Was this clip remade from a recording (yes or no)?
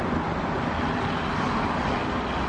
no